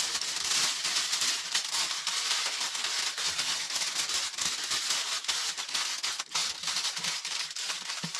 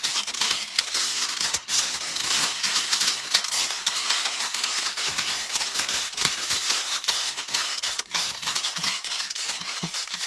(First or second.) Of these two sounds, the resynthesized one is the second